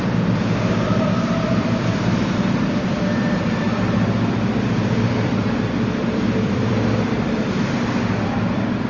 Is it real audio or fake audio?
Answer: fake